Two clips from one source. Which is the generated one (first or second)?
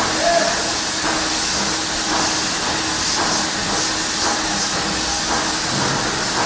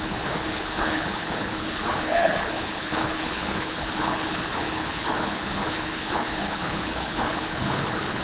second